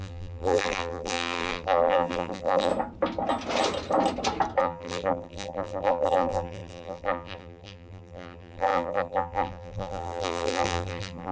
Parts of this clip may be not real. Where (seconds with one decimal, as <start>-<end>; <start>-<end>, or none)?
0.0-2.7; 4.6-11.3